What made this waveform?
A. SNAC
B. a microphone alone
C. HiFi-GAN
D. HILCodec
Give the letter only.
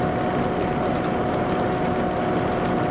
B